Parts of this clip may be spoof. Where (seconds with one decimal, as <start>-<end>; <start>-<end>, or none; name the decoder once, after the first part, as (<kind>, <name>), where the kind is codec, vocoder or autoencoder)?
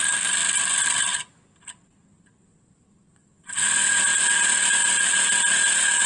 none